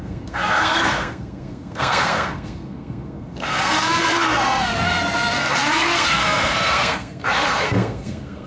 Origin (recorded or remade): remade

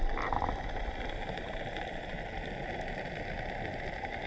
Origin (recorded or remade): recorded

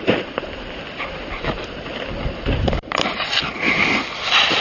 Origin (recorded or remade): recorded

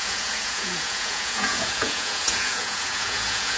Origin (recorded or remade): remade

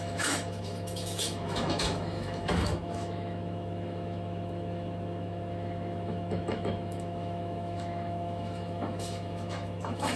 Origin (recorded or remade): remade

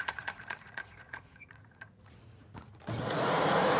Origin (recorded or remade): remade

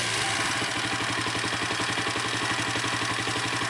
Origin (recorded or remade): recorded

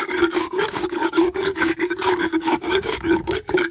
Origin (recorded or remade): remade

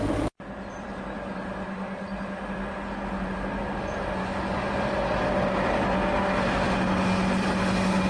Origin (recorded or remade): recorded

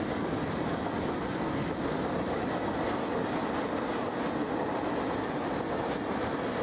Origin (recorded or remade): recorded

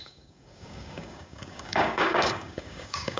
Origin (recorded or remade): remade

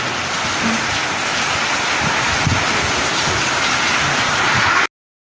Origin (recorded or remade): recorded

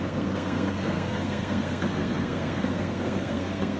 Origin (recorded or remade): remade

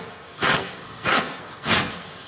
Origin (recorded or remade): remade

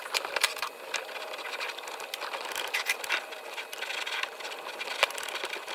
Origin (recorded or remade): recorded